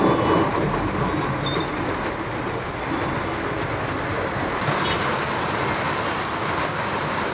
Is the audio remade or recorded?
recorded